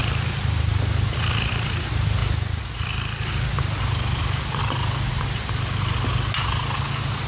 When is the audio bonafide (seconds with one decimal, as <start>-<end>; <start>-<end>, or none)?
0.0-7.3